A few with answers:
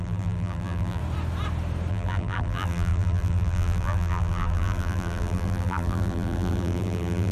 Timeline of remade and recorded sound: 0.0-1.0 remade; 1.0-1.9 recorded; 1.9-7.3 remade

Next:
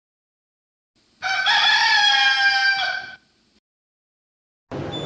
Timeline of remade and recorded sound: 0.0-2.6 recorded; 2.6-3.8 remade; 3.8-5.1 recorded